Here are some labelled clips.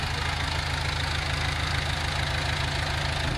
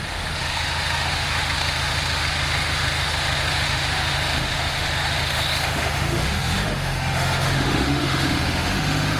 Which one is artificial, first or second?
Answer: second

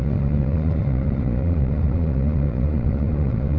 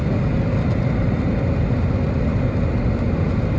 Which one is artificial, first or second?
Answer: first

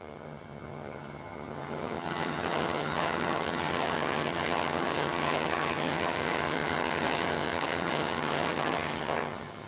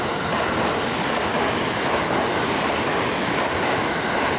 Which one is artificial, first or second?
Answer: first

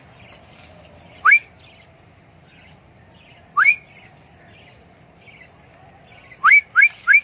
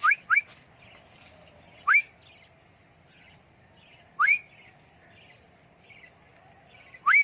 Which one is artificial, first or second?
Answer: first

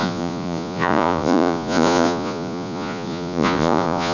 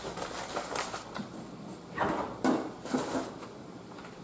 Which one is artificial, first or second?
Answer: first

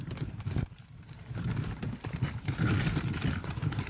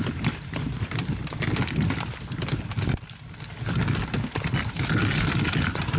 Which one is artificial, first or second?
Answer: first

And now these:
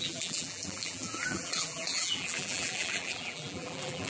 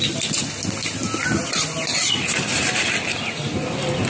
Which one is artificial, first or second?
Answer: first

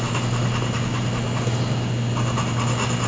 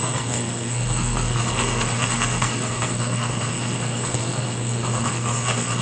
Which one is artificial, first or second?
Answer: second